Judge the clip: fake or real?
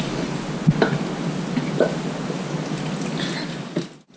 real